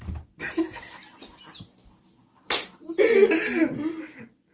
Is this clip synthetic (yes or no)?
yes